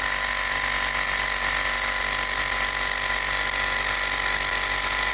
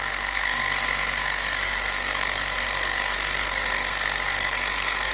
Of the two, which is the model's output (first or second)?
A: second